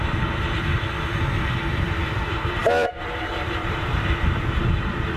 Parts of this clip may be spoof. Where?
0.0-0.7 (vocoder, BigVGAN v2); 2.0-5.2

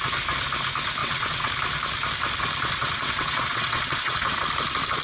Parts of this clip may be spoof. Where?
1.0-1.5 (vocoder, WaveNeXt); 2.8-4.4

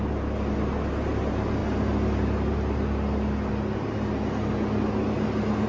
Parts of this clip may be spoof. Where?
none

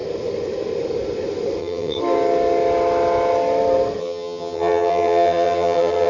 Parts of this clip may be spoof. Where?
1.6-2.0 (vocoder, HiFi-GAN); 4.0-6.1